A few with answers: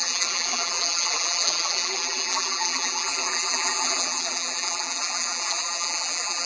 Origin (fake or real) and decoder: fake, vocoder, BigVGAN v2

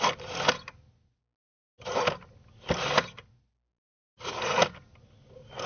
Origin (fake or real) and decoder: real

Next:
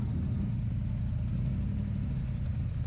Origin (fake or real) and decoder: real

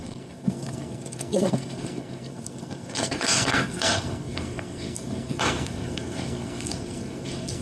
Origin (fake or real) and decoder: fake, codec, SNAC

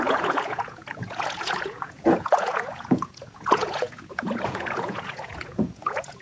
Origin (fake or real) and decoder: fake, vocoder, Vocos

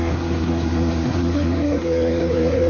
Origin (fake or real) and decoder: fake, codec, SNAC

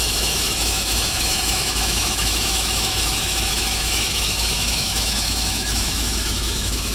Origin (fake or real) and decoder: fake, autoencoder, DAC-VAE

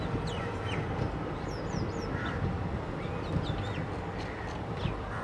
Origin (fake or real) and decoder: real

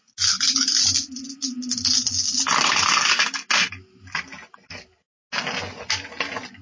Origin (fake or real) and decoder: real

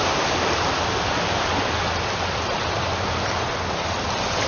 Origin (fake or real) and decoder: real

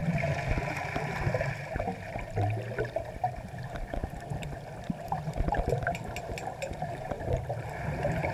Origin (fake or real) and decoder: real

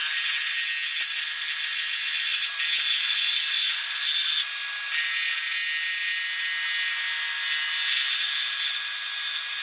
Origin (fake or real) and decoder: real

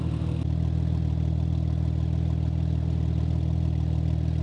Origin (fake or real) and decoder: real